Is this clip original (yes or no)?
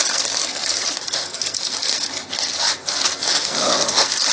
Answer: no